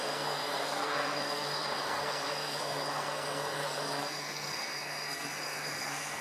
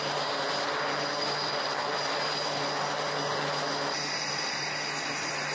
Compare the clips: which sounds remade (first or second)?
first